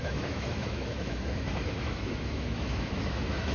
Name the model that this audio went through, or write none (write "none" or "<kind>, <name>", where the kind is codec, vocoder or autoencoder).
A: autoencoder, DAC-VAE